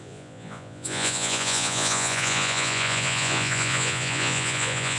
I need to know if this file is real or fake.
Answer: fake